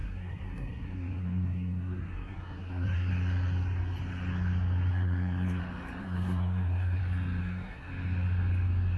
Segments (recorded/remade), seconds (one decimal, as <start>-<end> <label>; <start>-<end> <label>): 0.0-3.1 remade; 3.1-4.9 recorded; 4.9-5.6 remade; 5.6-6.0 recorded; 6.0-7.0 remade; 7.0-7.4 recorded; 7.4-7.9 remade; 7.9-9.0 recorded